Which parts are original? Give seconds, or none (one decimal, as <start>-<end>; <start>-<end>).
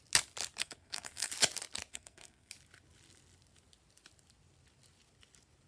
0.0-0.6; 1.3-1.9; 2.5-5.7